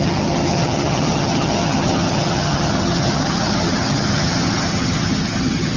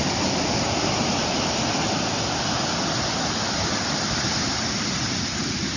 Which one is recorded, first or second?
second